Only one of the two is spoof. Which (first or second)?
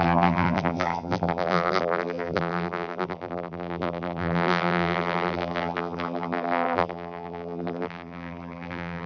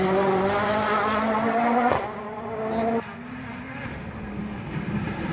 first